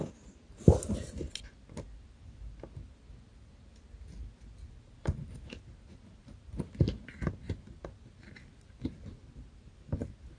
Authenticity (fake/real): real